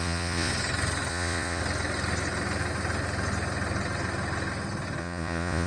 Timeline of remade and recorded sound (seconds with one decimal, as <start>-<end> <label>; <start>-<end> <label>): 0.0-0.5 remade; 0.5-1.1 recorded; 1.1-1.6 remade; 1.6-5.0 recorded; 5.0-5.7 remade